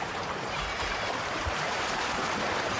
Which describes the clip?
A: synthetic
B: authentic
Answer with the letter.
A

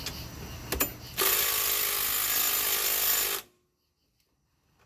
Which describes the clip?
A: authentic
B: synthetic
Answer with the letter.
A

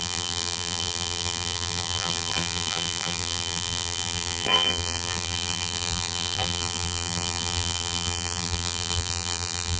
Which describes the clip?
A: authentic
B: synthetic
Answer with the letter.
B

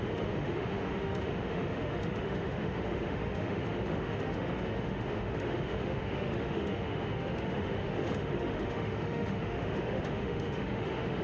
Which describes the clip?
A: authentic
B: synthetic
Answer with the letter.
B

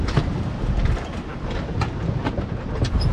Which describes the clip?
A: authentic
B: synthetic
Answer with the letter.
A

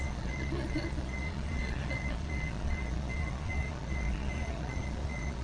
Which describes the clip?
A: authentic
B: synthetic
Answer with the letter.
B